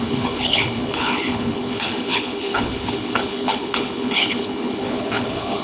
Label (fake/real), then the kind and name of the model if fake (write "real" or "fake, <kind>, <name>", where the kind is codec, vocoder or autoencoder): fake, codec, HILCodec